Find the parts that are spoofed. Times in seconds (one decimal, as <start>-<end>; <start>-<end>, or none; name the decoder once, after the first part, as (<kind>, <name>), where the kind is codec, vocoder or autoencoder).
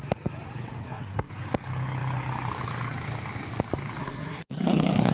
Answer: 0.8-1.3 (codec, SNAC); 4.0-5.1